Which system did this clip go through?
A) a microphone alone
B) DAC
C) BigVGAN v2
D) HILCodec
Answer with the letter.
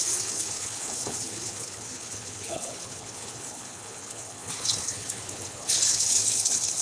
D